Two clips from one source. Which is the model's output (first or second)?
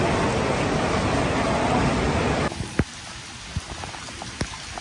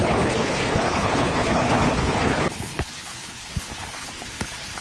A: second